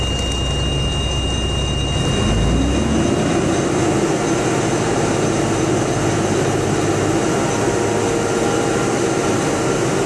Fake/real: real